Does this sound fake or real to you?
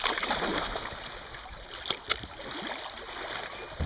real